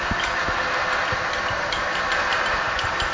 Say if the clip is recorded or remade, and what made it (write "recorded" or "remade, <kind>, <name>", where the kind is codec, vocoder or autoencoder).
recorded